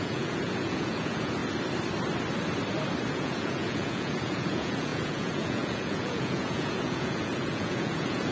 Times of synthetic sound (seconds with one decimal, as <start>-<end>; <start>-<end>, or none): 0.0-1.4; 3.1-8.3